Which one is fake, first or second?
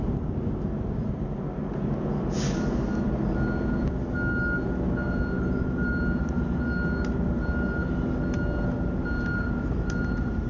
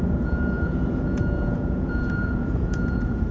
second